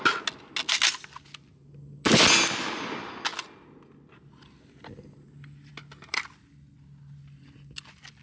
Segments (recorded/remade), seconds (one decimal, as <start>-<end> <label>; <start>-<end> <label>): 0.0-8.2 recorded